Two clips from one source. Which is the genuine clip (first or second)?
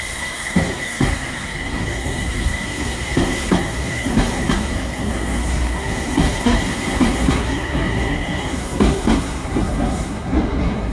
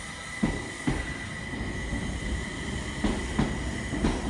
second